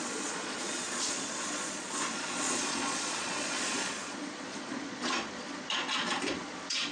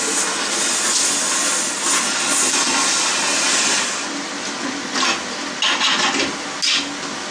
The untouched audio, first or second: second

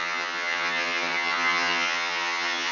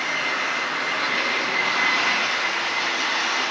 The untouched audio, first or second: second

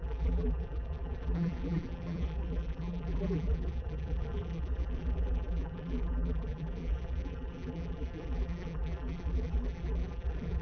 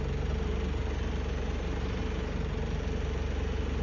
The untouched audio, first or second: second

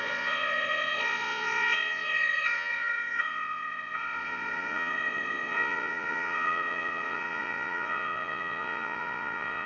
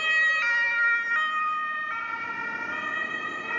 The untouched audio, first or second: second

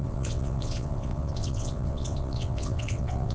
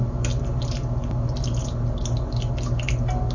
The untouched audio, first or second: second